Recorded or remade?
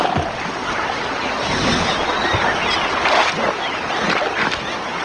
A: recorded